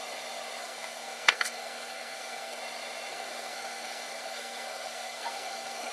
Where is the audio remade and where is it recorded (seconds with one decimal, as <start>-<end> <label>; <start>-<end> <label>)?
0.0-0.6 recorded; 0.6-2.6 remade; 2.6-3.1 recorded; 3.1-5.9 remade